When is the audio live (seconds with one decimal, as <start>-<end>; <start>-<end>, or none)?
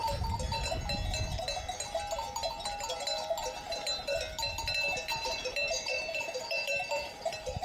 0.0-3.4; 4.2-5.1